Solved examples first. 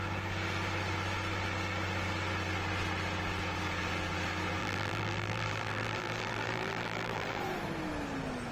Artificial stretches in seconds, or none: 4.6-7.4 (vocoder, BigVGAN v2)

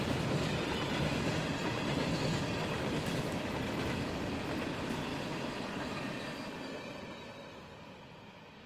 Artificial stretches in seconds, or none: 0.0-2.2 (vocoder, BigVGAN v2); 3.1-5.1; 6.0-8.7

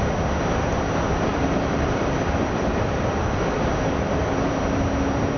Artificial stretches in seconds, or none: 1.3-4.5 (vocoder, BigVGAN v2)

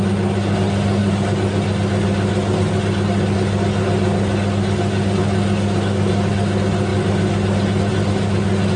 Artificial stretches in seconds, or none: none

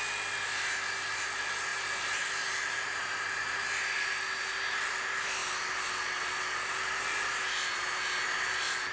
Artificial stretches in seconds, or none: none

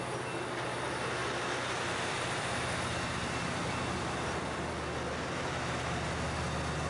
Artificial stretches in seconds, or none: 1.2-4.7 (vocoder, BigVGAN v2)